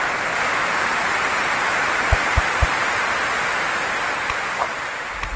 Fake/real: fake